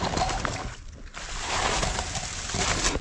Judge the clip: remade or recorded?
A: recorded